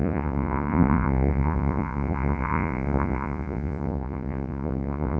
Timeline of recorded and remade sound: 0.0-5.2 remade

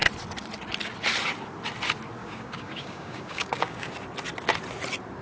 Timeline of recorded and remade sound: 0.0-2.2 recorded; 2.2-3.9 remade; 3.9-5.2 recorded

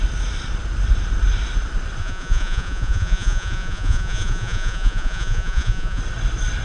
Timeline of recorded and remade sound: 0.0-2.0 recorded; 2.0-6.0 remade; 6.0-6.6 recorded

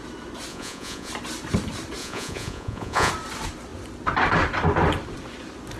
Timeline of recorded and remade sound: 0.0-0.5 recorded; 0.5-1.1 remade; 1.1-2.0 recorded; 2.0-3.1 remade; 3.1-5.8 recorded

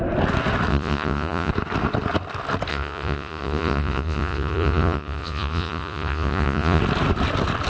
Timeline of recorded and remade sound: 0.0-0.7 recorded; 0.7-1.5 remade; 1.5-2.7 recorded; 2.7-6.8 remade; 6.8-7.7 recorded

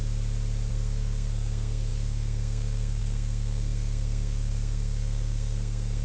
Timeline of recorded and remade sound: 0.0-0.7 recorded; 0.7-6.0 remade

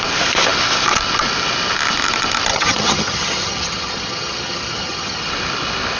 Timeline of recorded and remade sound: 0.0-2.5 recorded; 2.5-5.3 remade; 5.3-6.0 recorded

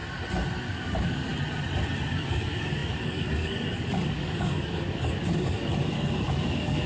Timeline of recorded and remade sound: 0.0-0.7 recorded; 0.7-1.3 remade; 1.3-2.1 recorded; 2.1-6.9 remade